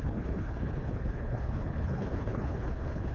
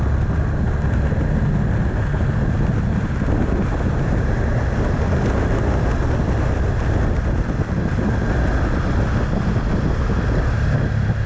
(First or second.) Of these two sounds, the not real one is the first